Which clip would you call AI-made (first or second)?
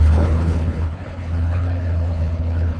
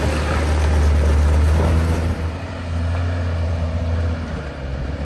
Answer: first